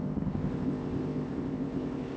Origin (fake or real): fake